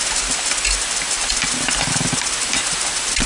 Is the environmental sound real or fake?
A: real